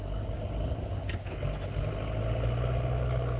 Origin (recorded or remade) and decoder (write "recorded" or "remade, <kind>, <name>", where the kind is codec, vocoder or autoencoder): recorded